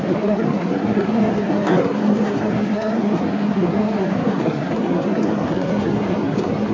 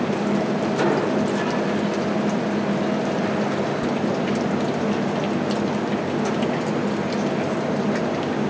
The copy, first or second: first